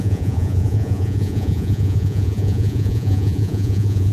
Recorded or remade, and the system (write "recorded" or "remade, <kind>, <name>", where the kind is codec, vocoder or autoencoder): remade, vocoder, Vocos